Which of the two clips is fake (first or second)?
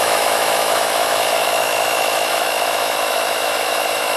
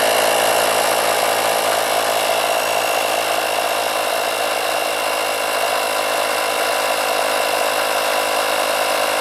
first